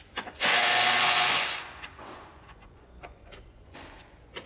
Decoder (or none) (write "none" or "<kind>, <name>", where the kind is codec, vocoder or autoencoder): vocoder, Vocos